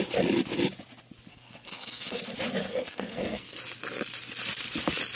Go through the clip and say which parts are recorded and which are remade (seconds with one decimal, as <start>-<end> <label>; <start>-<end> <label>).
0.0-1.3 recorded; 1.3-2.2 remade; 2.2-2.6 recorded; 2.6-3.6 remade; 3.6-5.2 recorded